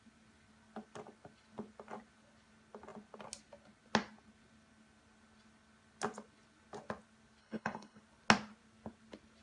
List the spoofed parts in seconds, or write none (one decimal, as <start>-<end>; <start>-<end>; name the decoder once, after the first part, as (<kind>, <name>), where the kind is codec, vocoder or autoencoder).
7.4-8.0 (codec, HILCodec)